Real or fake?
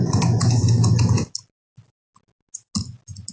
real